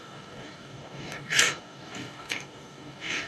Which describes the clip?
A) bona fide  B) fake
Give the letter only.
B